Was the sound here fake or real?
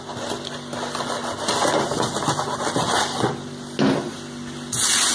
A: real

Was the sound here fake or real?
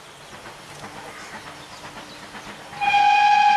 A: real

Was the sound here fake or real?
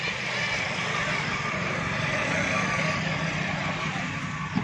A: real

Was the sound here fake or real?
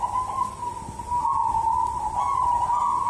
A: real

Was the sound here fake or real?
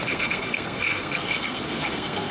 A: fake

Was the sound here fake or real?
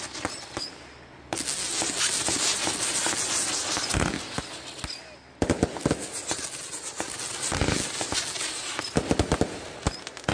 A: real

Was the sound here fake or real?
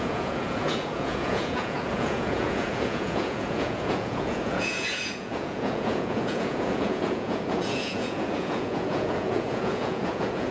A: fake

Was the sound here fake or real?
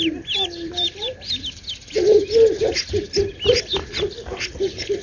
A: real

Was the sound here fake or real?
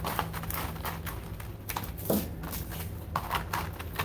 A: real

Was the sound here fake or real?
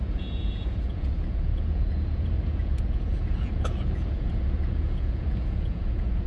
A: fake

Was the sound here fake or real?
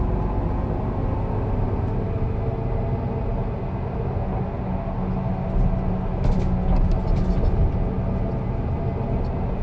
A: real